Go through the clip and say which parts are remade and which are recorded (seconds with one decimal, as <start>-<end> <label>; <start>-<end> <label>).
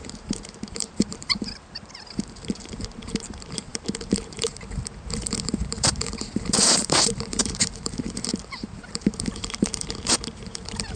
0.0-11.0 remade